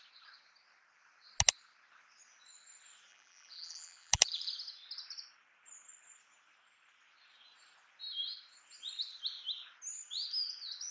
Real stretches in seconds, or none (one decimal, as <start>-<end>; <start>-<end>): 0.0-3.1; 4.5-10.9